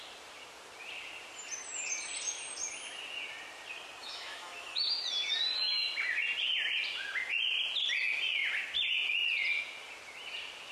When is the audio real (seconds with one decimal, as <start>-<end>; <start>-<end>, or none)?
0.0-4.0; 4.9-10.7